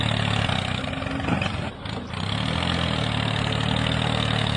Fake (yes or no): no